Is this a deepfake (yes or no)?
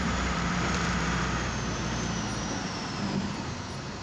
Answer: yes